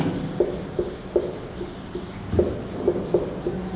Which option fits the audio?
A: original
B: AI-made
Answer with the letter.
A